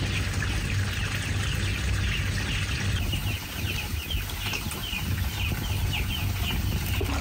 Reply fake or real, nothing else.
real